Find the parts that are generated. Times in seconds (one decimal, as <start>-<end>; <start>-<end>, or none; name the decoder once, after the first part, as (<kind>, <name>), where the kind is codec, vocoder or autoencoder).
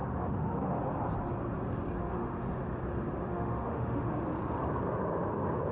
0.0-0.8 (autoencoder, DAC-VAE); 2.0-2.6; 3.2-4.1